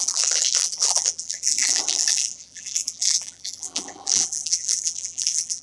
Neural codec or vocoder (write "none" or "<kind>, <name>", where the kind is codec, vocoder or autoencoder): vocoder, BigVGAN v2